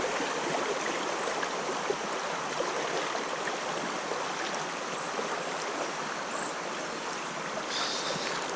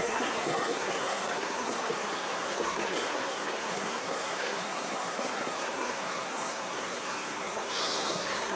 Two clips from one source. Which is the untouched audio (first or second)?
first